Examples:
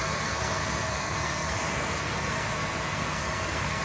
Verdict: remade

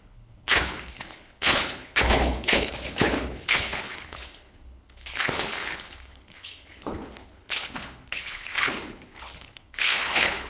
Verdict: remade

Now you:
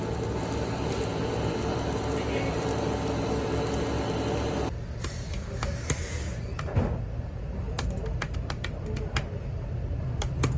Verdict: recorded